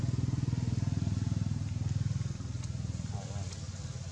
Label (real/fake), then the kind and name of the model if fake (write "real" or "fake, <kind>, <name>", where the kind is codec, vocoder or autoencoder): real